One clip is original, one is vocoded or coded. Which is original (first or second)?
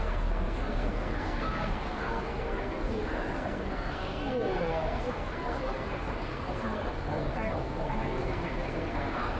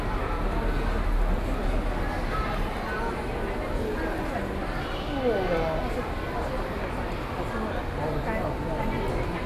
second